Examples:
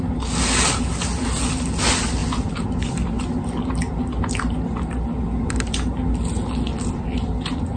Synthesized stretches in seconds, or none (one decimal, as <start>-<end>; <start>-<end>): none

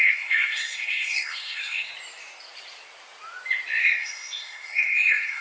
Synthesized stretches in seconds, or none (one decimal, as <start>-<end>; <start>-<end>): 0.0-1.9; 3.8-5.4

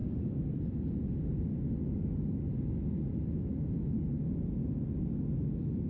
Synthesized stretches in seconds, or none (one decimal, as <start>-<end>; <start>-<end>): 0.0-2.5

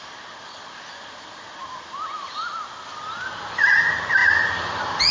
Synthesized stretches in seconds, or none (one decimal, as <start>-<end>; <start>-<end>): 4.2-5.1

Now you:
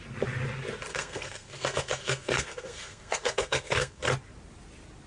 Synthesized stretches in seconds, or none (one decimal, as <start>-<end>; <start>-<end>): 0.9-4.0